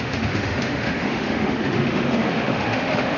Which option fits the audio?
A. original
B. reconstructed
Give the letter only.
B